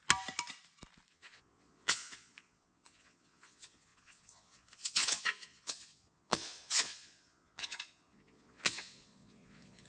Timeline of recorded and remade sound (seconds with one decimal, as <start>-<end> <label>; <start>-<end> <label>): 0.0-1.1 recorded; 1.1-9.9 remade

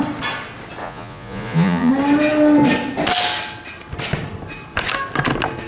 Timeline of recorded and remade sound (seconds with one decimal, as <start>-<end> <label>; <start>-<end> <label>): 0.0-0.8 recorded; 0.8-1.9 remade; 1.9-5.7 recorded

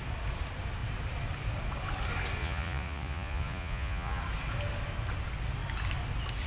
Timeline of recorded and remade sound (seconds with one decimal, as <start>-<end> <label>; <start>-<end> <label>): 0.0-2.4 recorded; 2.4-4.2 remade; 4.2-6.5 recorded

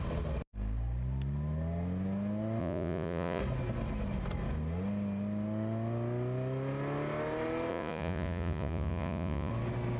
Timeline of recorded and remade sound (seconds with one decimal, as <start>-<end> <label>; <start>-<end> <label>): 0.0-2.6 recorded; 2.6-3.4 remade; 3.4-7.7 recorded; 7.7-9.5 remade; 9.5-10.0 recorded